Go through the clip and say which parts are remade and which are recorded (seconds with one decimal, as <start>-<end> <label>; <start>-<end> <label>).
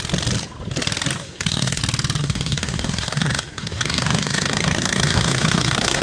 0.0-1.2 recorded; 1.2-1.8 remade; 1.8-2.2 recorded; 2.2-6.0 remade